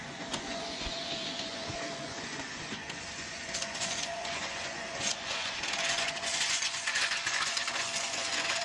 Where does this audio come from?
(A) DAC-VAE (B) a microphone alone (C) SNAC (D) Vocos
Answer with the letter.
D